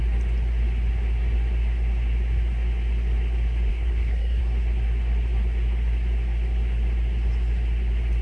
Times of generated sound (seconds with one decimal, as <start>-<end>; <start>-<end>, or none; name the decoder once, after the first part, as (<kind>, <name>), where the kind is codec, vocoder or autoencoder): 3.7-4.4 (codec, SNAC)